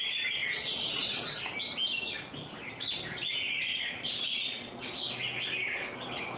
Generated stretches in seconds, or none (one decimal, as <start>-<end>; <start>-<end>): 0.4-1.4; 3.7-4.8